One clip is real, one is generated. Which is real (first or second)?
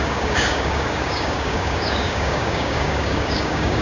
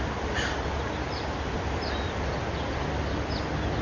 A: second